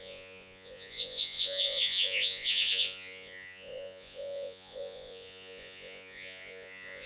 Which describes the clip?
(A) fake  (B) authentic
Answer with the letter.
A